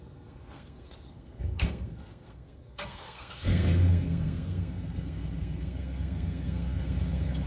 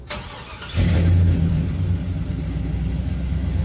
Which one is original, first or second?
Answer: second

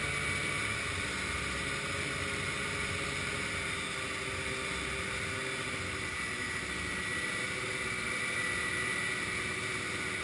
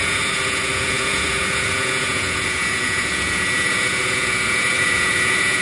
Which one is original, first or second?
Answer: first